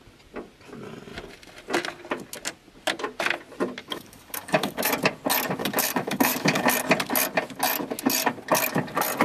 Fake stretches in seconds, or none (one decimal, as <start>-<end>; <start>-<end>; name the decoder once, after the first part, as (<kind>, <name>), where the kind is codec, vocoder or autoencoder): 3.8-4.9 (codec, DAC); 5.6-6.7